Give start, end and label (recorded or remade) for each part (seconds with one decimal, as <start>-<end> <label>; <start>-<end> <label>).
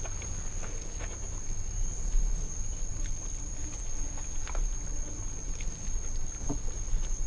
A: 0.0-7.3 recorded